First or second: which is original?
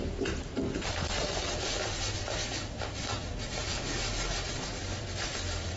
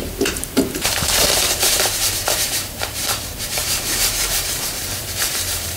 first